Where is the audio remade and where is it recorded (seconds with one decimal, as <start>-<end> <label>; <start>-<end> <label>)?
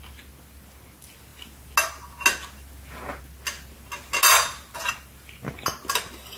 0.0-6.4 recorded